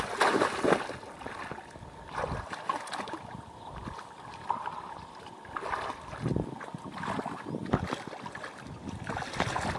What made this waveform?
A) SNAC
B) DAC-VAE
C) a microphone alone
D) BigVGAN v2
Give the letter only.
C